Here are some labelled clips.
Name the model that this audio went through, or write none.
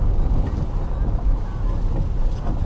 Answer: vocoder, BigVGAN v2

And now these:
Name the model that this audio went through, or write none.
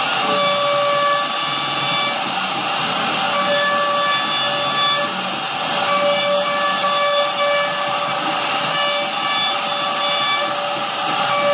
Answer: none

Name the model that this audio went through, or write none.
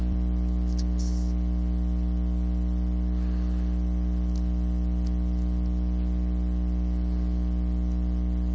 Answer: none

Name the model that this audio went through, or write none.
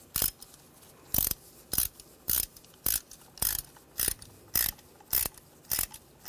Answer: none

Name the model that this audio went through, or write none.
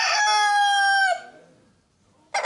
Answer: none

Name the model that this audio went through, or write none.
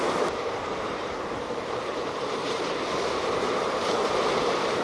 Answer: vocoder, BigVGAN v2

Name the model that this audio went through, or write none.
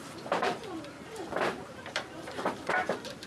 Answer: vocoder, BigVGAN v2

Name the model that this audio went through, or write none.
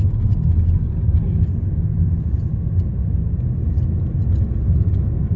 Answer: none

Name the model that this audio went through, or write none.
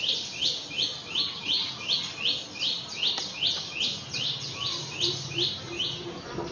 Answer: none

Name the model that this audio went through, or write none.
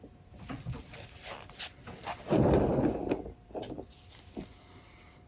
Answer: vocoder, BigVGAN v2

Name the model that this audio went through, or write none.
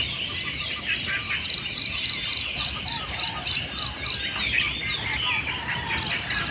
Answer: none